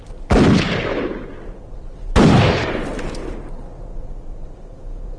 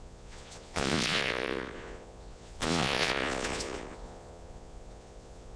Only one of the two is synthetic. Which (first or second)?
second